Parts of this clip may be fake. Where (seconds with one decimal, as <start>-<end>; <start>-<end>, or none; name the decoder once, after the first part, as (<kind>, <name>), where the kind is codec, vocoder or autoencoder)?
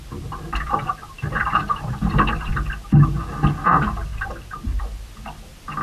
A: 1.7-2.7 (vocoder, BigVGAN v2); 4.1-4.8